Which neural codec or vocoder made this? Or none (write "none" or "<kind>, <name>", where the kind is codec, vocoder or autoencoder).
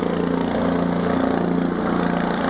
none